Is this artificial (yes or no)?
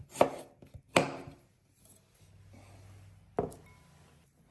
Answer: no